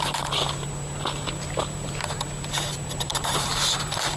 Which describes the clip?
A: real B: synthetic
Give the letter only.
A